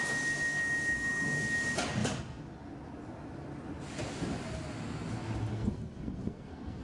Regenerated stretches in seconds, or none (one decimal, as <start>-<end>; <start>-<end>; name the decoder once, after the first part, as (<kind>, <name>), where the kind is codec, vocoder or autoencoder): 5.5-6.8 (codec, SNAC)